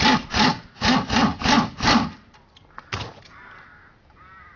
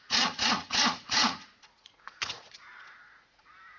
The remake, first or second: second